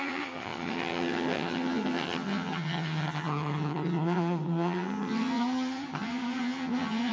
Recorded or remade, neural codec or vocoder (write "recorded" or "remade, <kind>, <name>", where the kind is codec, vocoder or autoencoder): remade, vocoder, HiFi-GAN